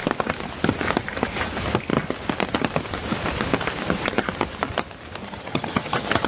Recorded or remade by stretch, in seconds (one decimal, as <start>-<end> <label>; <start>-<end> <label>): 0.0-5.2 recorded; 5.2-6.3 remade